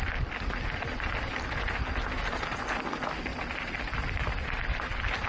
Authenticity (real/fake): real